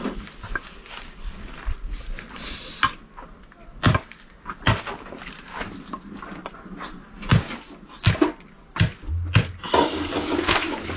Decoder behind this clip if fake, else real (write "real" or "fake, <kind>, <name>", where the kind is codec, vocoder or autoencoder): real